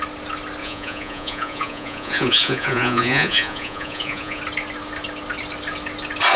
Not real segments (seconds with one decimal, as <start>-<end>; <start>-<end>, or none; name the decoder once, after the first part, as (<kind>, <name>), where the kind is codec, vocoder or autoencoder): 0.6-4.4 (vocoder, Vocos)